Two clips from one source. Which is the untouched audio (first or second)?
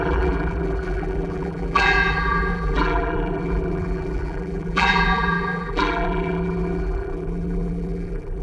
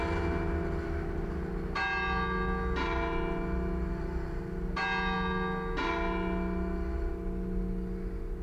second